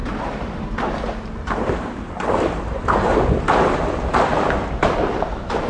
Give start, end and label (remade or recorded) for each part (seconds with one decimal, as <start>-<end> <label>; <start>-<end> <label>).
0.0-3.4 remade; 3.4-5.7 recorded